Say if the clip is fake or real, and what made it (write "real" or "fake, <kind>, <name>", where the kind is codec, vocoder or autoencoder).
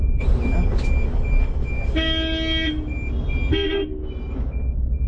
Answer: real